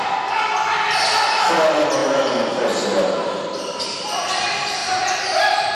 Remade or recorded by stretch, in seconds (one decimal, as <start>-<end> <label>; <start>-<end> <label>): 0.0-5.7 recorded